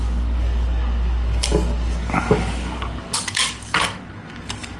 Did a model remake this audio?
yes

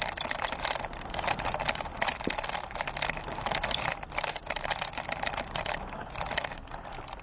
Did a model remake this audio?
no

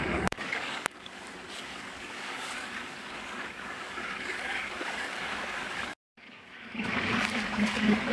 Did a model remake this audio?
yes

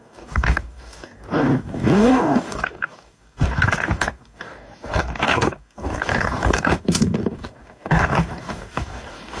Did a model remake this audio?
yes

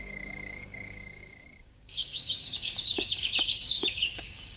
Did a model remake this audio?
yes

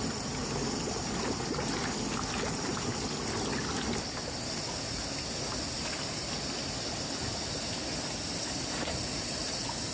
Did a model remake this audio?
no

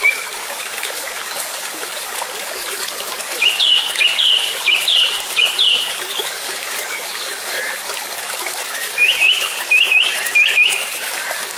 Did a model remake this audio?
yes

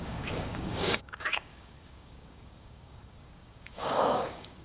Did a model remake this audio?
yes